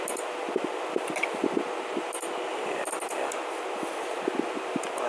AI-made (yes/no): no